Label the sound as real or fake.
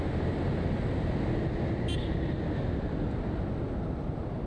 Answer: real